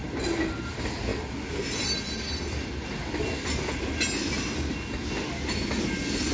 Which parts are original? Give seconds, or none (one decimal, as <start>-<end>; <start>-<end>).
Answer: 0.0-6.3